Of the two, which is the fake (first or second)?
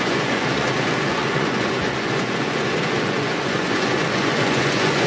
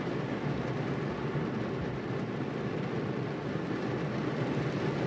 first